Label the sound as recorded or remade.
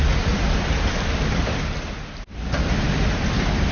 recorded